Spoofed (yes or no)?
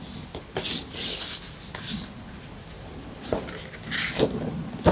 no